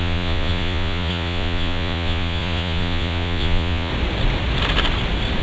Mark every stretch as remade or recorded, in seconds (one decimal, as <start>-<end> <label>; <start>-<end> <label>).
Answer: 0.0-3.9 remade; 3.9-5.4 recorded